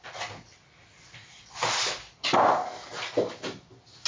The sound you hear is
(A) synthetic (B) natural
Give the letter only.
B